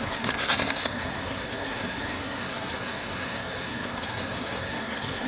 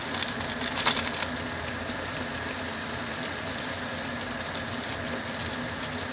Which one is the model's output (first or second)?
first